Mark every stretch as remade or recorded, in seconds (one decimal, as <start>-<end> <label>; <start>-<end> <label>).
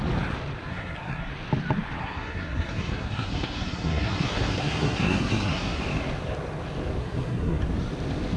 0.0-0.7 recorded; 0.7-1.3 remade; 1.3-2.0 recorded; 2.0-5.8 remade; 5.8-7.0 recorded; 7.0-7.6 remade; 7.6-8.4 recorded